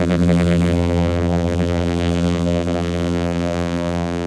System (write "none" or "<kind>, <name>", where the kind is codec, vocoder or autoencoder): vocoder, BigVGAN v2